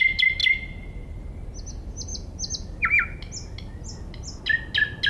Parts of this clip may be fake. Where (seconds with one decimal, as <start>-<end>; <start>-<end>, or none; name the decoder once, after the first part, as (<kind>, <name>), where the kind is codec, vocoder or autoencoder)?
none

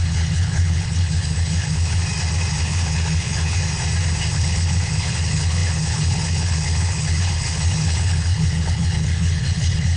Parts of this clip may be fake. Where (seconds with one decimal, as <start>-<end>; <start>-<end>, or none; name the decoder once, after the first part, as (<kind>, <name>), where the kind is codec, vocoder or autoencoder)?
0.0-2.0 (codec, HILCodec); 2.6-3.6; 4.3-10.0

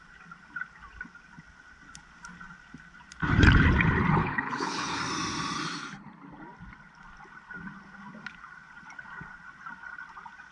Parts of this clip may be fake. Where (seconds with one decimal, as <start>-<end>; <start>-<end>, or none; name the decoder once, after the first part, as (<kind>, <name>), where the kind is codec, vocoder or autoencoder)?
4.2-5.0 (codec, HILCodec)

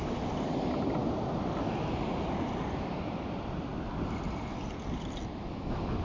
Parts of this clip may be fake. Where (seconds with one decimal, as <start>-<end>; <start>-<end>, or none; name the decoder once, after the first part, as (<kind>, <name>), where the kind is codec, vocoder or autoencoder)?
none

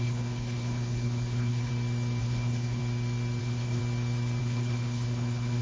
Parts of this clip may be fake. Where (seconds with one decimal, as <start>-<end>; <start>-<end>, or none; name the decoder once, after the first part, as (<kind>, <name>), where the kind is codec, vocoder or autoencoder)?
0.0-1.7 (codec, HILCodec); 2.2-2.8; 3.4-3.8; 4.4-5.6